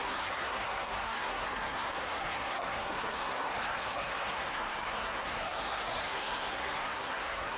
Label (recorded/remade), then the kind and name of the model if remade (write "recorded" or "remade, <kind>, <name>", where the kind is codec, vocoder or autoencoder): remade, codec, SNAC